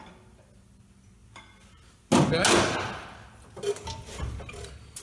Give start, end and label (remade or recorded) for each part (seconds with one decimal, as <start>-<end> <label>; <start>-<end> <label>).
0.0-5.0 recorded